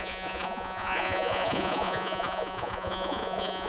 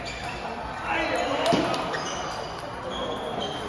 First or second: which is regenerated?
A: first